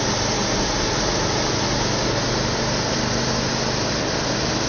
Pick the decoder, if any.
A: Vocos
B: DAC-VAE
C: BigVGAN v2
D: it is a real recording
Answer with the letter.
D